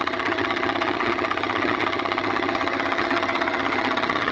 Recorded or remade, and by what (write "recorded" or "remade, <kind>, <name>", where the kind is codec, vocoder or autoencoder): remade, vocoder, HiFi-GAN